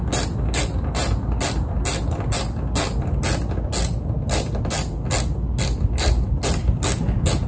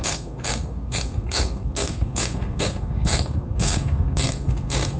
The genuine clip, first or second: first